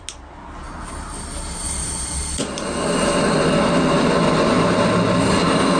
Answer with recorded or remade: recorded